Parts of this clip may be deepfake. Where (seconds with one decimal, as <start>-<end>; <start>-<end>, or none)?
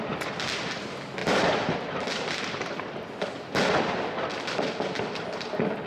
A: 1.2-2.4